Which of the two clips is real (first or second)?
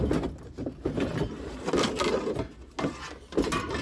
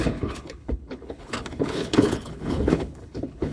first